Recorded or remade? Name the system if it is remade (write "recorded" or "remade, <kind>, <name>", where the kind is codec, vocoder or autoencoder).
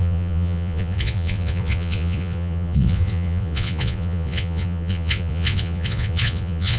remade, vocoder, Vocos